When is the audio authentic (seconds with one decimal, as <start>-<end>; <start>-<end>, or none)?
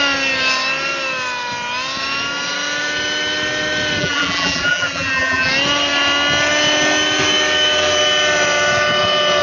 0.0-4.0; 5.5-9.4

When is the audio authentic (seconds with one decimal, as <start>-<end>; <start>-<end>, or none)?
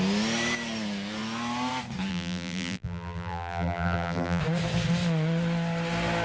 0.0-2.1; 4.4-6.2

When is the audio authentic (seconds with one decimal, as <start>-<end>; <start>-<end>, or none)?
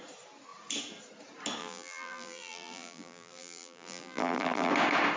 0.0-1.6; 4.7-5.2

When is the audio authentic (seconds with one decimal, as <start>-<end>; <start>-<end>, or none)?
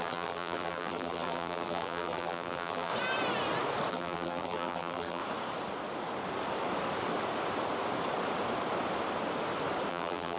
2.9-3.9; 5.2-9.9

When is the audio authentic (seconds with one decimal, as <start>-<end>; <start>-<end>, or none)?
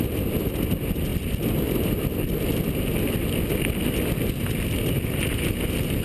0.0-6.0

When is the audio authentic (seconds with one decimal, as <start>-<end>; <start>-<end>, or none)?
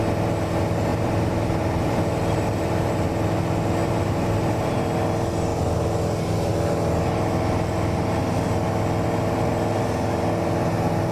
0.0-0.9; 3.4-3.8; 4.8-11.1